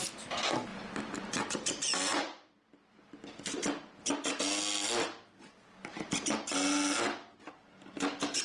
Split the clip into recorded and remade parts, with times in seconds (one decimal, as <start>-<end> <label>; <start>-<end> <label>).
0.0-8.4 recorded